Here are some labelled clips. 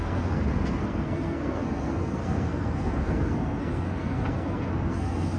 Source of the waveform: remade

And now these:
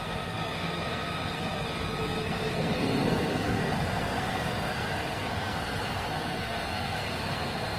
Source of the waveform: remade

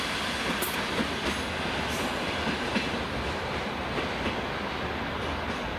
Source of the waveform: recorded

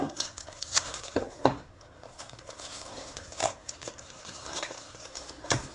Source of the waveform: remade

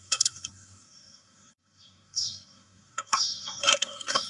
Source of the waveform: remade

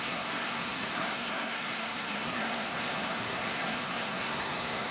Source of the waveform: remade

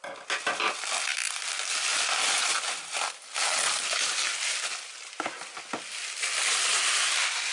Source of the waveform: recorded